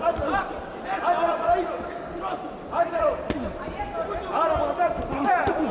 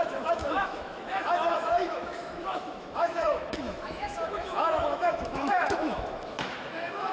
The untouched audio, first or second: first